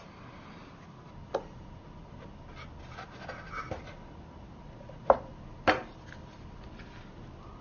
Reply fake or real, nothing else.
real